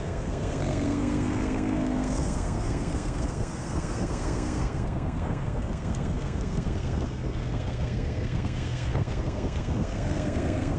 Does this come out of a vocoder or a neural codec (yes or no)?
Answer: yes